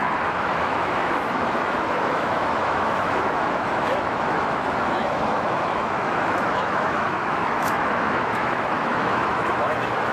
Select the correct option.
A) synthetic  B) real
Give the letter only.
A